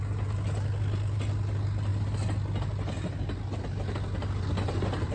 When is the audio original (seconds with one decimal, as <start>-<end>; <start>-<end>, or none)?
0.0-5.1